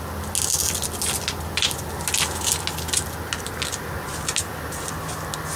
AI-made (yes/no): no